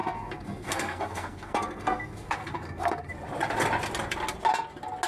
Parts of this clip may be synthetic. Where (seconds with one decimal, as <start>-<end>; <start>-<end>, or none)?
0.0-3.1